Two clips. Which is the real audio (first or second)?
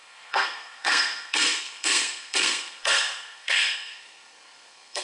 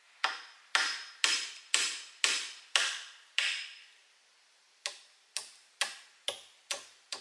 second